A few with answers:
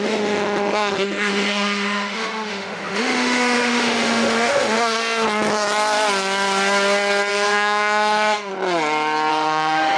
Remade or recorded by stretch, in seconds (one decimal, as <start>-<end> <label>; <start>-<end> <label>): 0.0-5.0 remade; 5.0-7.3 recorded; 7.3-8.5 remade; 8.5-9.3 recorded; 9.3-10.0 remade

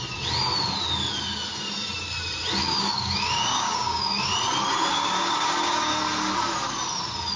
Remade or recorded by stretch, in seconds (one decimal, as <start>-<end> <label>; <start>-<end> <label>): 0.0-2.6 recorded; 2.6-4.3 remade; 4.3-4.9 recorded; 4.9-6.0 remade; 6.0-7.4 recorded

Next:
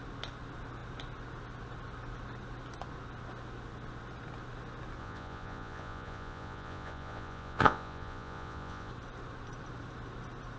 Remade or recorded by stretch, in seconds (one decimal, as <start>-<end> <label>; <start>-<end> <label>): 0.0-5.0 recorded; 5.0-8.9 remade; 8.9-10.6 recorded

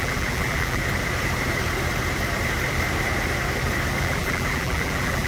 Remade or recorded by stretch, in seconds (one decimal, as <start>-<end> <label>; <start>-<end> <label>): 0.0-0.8 remade; 0.8-4.0 recorded; 4.0-5.3 remade